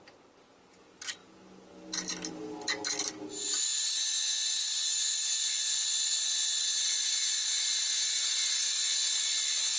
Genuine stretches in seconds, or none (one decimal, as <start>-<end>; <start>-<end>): 0.0-9.8